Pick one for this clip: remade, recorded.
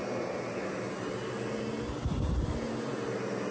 recorded